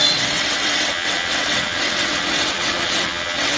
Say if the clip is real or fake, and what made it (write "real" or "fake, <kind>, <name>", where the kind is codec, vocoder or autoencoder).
fake, vocoder, WaveNeXt